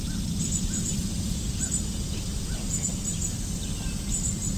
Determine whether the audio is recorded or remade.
remade